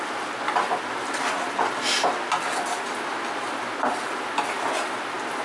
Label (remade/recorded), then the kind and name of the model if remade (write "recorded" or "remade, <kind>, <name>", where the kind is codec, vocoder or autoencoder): recorded